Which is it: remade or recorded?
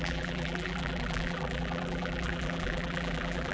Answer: remade